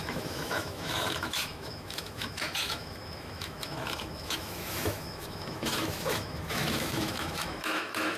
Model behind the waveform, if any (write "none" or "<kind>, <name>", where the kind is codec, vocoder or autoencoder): autoencoder, DAC-VAE